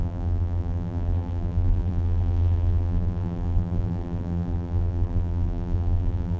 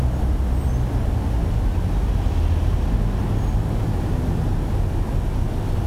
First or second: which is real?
second